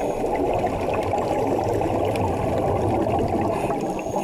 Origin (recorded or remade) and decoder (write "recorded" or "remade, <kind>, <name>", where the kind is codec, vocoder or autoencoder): recorded